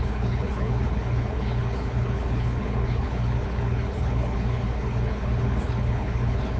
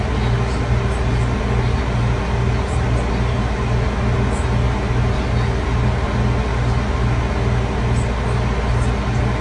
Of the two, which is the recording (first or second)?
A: second